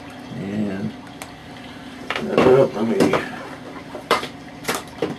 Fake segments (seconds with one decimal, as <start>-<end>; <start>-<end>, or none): 1.4-4.5